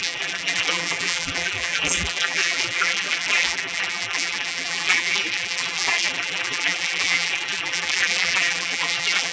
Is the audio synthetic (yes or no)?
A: yes